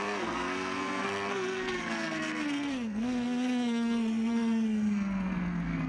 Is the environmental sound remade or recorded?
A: remade